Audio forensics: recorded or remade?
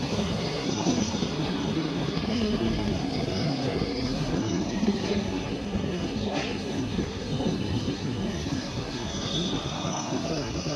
remade